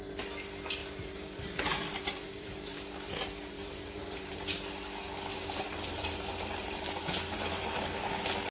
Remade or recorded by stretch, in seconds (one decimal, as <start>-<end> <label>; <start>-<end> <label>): 0.0-0.8 recorded; 0.8-4.5 remade; 4.5-5.3 recorded; 5.3-8.1 remade; 8.1-8.5 recorded